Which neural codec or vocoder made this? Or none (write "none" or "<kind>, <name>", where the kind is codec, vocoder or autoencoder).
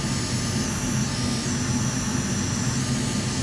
none